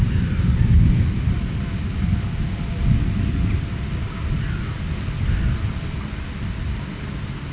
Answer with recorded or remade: recorded